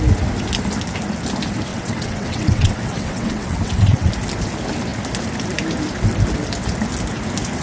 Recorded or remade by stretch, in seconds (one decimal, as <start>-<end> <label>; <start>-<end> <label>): 0.0-1.7 recorded; 1.7-4.1 remade; 4.1-7.6 recorded

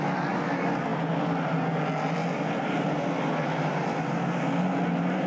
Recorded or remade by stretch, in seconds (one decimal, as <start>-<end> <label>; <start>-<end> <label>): 0.0-5.3 recorded